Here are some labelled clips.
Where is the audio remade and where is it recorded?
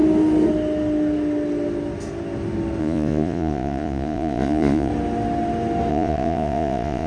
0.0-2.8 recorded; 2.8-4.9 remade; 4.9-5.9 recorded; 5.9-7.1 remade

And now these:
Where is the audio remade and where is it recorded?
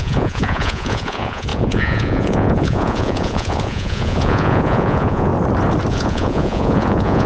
0.0-5.3 remade; 5.3-5.9 recorded; 5.9-7.3 remade